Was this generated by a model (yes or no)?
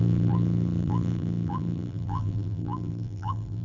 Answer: yes